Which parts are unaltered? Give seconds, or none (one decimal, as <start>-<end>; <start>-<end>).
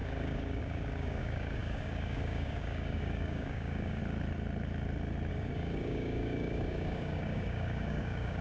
4.0-5.3